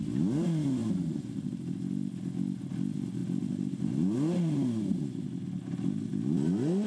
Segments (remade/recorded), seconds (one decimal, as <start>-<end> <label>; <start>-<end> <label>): 0.0-0.8 recorded; 0.8-1.7 remade; 1.7-3.2 recorded; 3.2-5.0 remade; 5.0-6.9 recorded